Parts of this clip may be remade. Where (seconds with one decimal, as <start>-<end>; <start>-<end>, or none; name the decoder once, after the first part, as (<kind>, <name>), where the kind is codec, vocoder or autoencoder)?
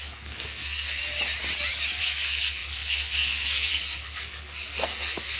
0.0-1.0 (codec, SNAC); 2.0-5.4